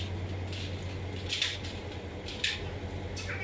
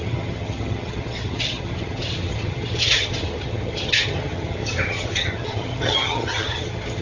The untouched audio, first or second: first